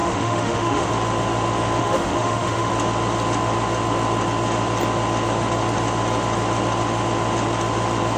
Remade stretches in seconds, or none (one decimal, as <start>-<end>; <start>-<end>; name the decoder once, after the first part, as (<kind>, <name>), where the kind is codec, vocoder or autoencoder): 0.0-0.9 (autoencoder, DAC-VAE); 1.8-2.7